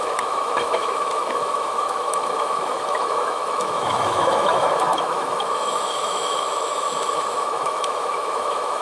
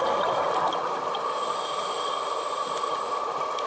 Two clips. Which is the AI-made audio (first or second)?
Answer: first